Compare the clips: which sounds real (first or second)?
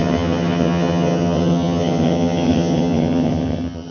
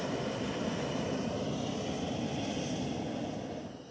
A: second